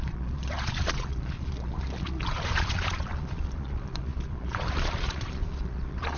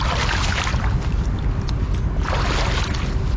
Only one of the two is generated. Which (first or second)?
first